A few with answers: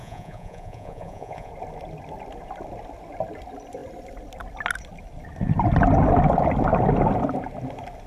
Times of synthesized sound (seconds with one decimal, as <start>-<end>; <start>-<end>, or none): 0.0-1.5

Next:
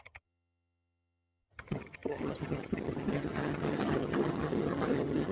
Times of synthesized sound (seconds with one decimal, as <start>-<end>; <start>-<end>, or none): 0.0-5.3

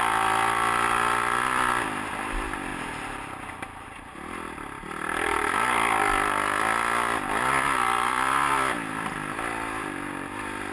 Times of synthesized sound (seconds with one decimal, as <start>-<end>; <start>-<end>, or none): 0.0-6.0; 6.6-10.7

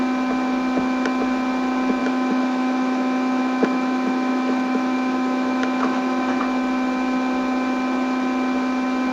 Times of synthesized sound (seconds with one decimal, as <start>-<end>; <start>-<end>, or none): 2.0-6.4

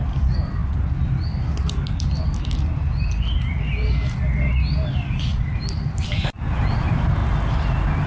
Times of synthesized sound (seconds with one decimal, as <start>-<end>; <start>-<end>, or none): none

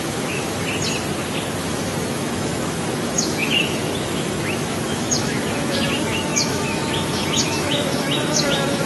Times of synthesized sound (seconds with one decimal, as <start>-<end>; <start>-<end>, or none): 0.0-0.6; 1.6-8.9